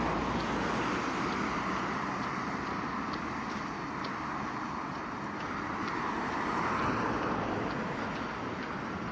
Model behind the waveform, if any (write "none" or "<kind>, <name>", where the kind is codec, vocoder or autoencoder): none